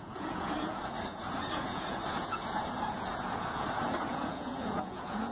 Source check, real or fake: fake